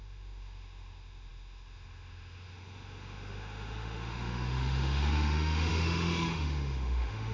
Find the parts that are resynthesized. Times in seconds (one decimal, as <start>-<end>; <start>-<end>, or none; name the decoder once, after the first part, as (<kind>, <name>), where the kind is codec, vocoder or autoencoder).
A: 0.0-7.3 (autoencoder, DAC-VAE)